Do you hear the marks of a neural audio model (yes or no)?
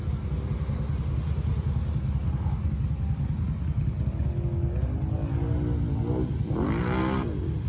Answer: no